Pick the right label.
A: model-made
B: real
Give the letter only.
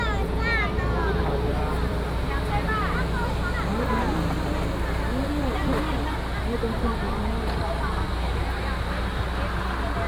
B